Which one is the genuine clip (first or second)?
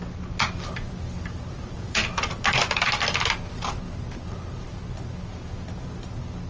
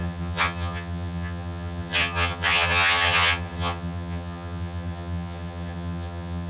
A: first